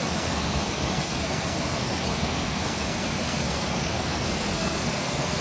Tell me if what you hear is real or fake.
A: fake